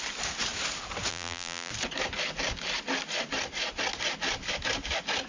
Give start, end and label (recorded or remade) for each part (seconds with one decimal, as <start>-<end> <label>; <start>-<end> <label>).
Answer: 0.0-1.1 recorded; 1.1-1.7 remade; 1.7-5.3 recorded